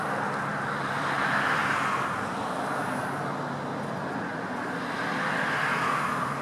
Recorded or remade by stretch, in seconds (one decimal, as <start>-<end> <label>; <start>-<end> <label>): 0.0-0.5 recorded; 0.5-3.0 remade; 3.0-6.4 recorded